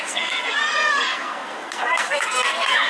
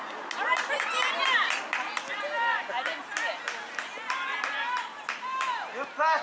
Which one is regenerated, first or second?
first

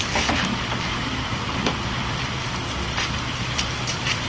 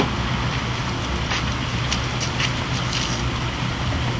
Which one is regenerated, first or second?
first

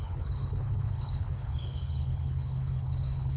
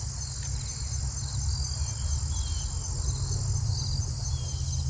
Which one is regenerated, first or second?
first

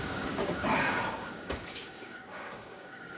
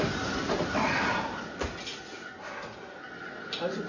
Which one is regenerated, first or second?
first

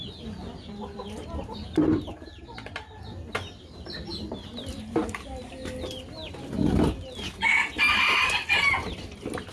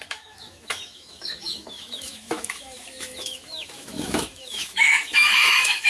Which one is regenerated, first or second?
second